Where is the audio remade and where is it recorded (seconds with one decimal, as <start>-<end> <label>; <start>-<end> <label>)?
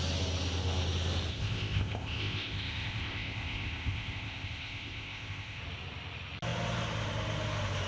0.0-1.3 recorded; 1.3-5.6 remade; 5.6-7.9 recorded